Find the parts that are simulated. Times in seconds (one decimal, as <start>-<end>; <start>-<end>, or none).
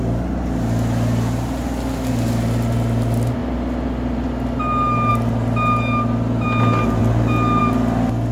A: none